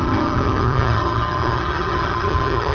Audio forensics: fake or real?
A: fake